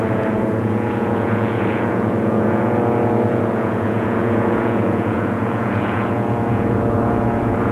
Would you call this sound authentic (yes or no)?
no